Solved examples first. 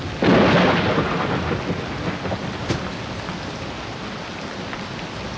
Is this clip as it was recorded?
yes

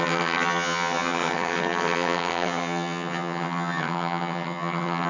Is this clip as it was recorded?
no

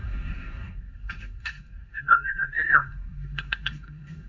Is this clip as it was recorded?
no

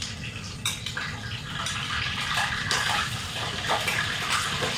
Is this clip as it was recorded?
no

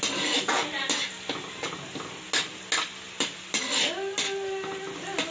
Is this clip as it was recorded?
yes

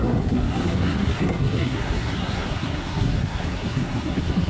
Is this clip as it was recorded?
no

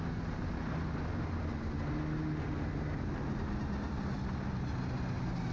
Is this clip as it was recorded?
yes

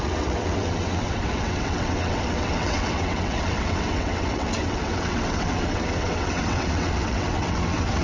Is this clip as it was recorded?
no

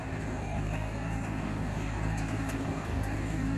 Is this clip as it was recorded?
no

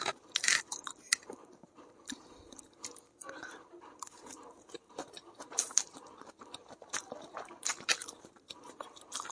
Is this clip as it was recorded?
no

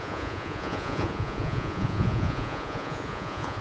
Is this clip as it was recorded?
no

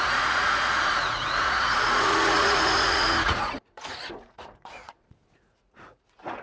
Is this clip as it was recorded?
no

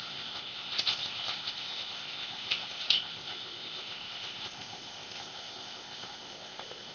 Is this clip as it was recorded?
no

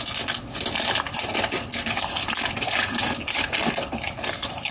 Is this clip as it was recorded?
yes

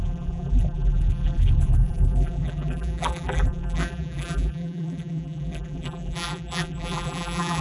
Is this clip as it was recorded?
no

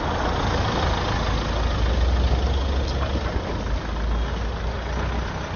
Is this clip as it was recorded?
yes